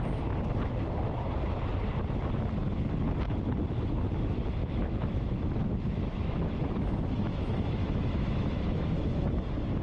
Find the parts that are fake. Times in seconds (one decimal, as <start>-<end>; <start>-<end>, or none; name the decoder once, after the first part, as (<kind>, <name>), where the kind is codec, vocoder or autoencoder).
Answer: 4.6-9.4 (autoencoder, DAC-VAE)